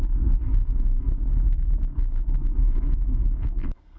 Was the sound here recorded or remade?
remade